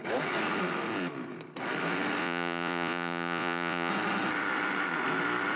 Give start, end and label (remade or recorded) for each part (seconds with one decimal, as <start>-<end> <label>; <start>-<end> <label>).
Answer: 0.0-2.2 recorded; 2.2-3.9 remade; 3.9-5.6 recorded